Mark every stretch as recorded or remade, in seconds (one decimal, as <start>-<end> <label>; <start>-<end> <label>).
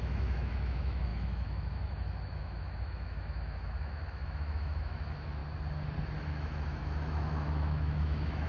0.0-5.4 remade; 5.4-6.2 recorded; 6.2-8.5 remade